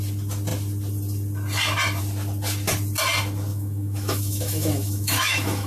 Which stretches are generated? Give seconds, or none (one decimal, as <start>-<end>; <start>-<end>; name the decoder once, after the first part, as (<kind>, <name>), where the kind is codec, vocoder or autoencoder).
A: 3.5-5.7 (autoencoder, DAC-VAE)